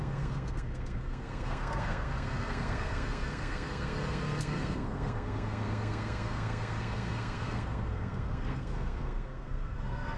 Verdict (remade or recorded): remade